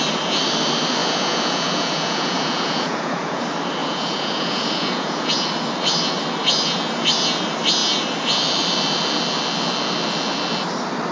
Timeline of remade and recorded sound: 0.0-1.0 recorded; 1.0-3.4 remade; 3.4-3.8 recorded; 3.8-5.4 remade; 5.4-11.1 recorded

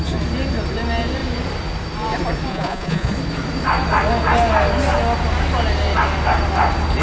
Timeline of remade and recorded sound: 0.0-2.5 recorded; 2.5-3.1 remade; 3.1-7.0 recorded

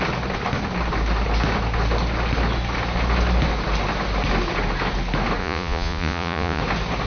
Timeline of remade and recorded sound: 0.0-5.4 recorded; 5.4-6.6 remade; 6.6-7.1 recorded

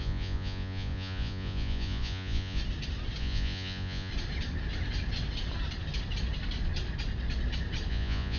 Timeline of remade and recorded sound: 0.0-2.6 remade; 2.6-3.2 recorded; 3.2-4.1 remade; 4.1-7.9 recorded; 7.9-8.4 remade

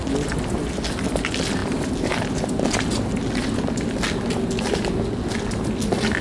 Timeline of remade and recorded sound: 0.0-6.2 recorded